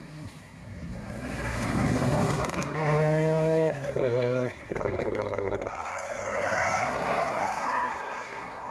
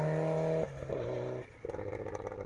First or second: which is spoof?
first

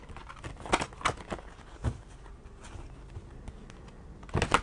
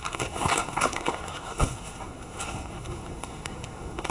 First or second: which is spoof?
second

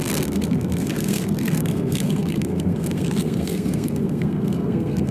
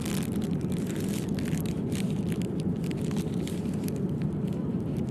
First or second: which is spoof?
first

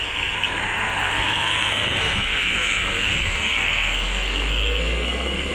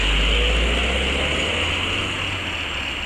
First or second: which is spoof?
first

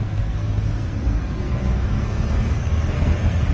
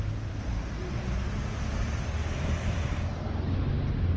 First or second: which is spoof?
first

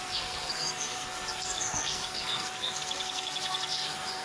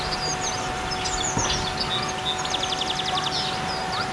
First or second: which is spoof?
first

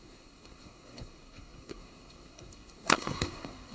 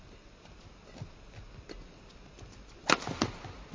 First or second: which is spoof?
first